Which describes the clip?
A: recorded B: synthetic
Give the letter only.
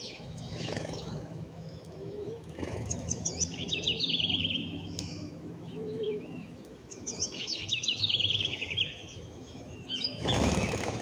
B